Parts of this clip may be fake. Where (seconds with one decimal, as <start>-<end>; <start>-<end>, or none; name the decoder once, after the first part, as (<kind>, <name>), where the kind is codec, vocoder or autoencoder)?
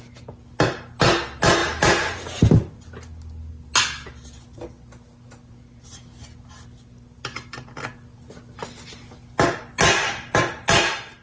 none